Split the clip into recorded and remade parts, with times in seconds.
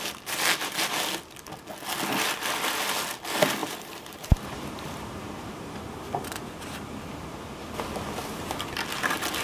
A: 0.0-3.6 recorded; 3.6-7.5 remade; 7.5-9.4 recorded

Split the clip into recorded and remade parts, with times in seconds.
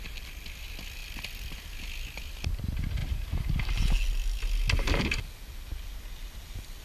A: 0.0-6.8 recorded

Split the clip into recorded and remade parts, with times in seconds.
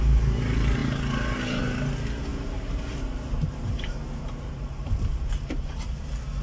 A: 0.0-2.3 recorded; 2.3-5.7 remade; 5.7-6.4 recorded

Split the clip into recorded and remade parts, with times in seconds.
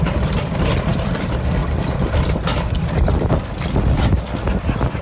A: 0.0-1.6 remade; 1.6-4.6 recorded; 4.6-5.0 remade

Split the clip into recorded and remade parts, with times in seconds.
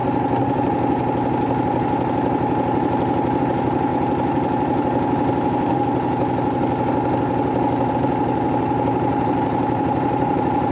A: 0.0-3.4 recorded; 3.4-3.9 remade; 3.9-7.9 recorded; 7.9-10.7 remade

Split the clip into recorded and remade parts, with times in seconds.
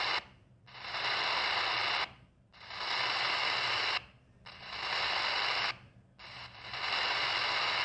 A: 0.0-7.8 recorded